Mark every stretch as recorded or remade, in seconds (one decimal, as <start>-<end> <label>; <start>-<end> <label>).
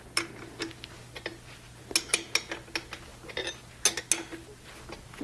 0.0-5.2 recorded